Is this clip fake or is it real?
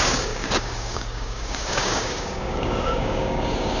fake